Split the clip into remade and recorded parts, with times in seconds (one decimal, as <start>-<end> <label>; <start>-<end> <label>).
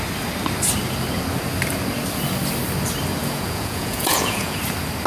0.0-3.2 recorded; 3.2-4.6 remade; 4.6-5.1 recorded